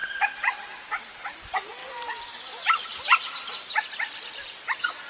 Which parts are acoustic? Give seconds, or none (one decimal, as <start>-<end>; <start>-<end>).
0.0-1.8; 3.3-5.1